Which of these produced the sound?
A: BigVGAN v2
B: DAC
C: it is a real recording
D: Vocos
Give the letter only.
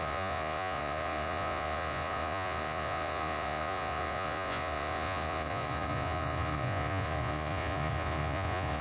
D